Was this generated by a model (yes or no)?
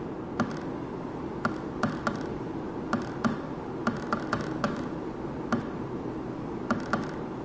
no